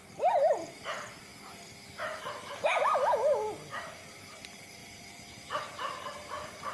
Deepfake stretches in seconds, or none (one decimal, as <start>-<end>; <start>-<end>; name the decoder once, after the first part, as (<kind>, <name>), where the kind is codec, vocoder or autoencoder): 0.0-1.3 (vocoder, BigVGAN v2); 3.7-4.8; 5.6-6.7